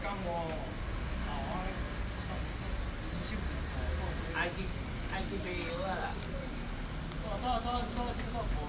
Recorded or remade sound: recorded